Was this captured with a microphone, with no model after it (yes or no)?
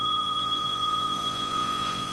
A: no